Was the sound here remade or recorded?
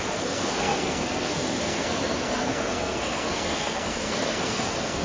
remade